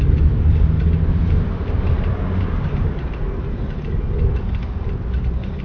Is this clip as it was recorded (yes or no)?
yes